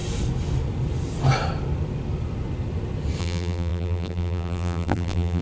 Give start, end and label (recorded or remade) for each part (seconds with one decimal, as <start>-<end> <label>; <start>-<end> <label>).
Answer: 0.0-3.2 recorded; 3.2-5.4 remade